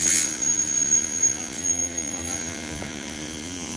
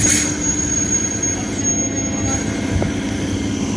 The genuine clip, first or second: second